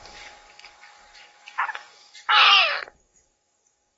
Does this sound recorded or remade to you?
remade